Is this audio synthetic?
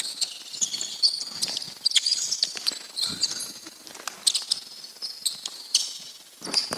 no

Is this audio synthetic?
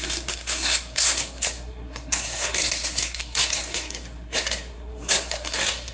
yes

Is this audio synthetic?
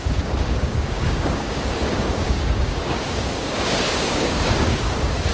yes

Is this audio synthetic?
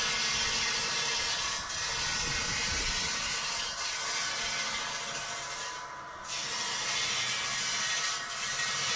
no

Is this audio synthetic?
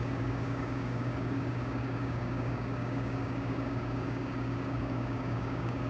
yes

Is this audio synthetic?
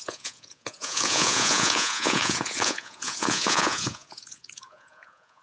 yes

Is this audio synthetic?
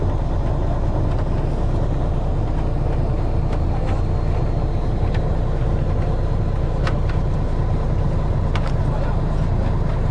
no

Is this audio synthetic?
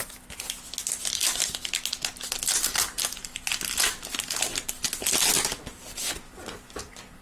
no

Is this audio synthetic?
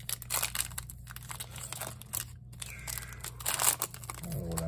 no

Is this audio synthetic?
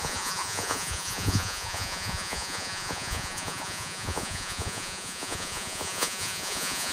yes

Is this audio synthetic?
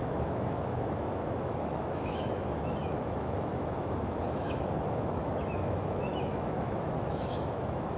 yes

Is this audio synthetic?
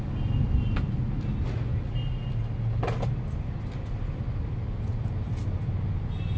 no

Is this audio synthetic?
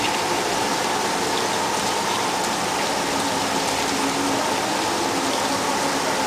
no